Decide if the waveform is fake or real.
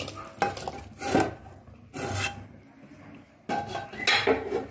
real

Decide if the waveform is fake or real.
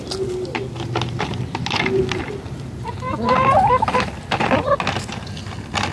real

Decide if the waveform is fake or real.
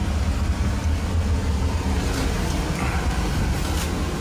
real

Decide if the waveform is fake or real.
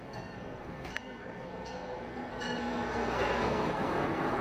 fake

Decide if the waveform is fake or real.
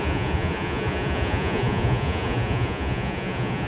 fake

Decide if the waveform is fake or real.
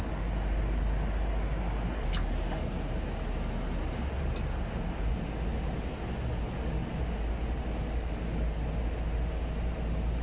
real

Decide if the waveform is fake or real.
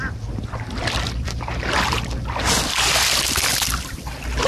real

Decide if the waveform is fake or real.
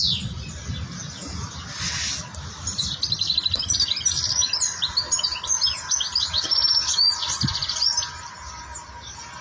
real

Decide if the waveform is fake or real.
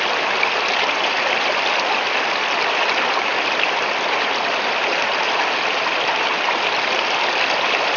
real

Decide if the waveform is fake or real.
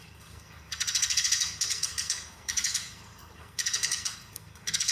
fake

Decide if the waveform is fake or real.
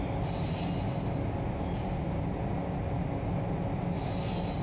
real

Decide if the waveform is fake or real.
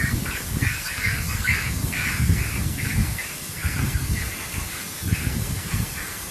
fake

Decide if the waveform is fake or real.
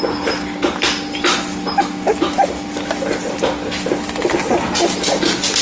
real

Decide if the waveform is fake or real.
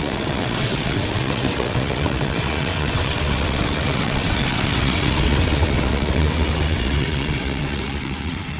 fake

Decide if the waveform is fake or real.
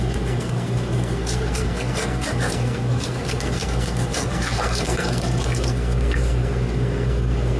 fake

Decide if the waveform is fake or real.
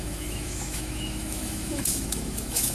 fake